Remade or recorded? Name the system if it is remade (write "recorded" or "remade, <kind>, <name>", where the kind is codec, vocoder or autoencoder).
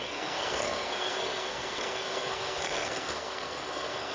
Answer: remade, codec, SNAC